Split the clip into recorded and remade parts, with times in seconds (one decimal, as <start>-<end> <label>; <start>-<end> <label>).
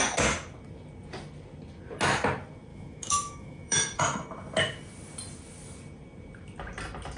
0.0-2.7 recorded; 2.7-4.0 remade; 4.0-7.2 recorded